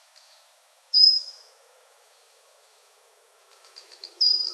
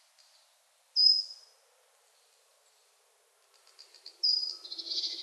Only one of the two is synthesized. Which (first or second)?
first